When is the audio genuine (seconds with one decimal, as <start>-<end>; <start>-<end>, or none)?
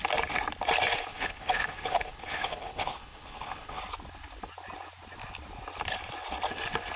0.0-1.1; 3.8-7.0